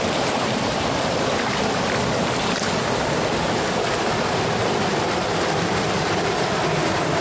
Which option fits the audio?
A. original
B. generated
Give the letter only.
A